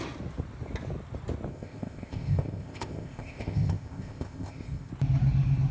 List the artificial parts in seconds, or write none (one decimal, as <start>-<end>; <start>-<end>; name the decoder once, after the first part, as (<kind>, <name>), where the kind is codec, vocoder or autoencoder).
1.5-4.9 (codec, ZipCodec)